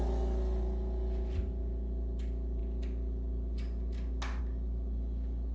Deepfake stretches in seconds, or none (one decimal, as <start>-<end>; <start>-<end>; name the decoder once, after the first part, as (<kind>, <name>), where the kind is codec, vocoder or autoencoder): none